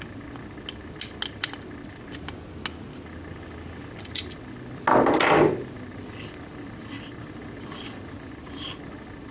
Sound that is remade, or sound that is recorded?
recorded